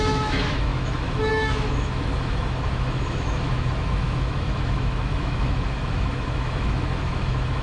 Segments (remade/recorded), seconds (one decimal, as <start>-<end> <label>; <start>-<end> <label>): 0.0-7.6 remade